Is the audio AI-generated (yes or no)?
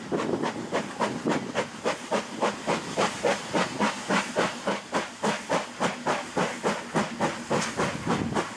no